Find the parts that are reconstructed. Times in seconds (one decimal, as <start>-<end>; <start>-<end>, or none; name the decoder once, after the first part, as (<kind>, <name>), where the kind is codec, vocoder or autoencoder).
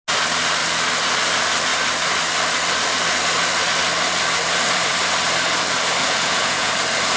6.0-6.7 (vocoder, Vocos)